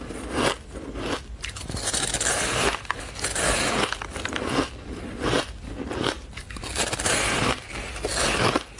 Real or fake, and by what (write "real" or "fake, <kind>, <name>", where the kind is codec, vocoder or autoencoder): real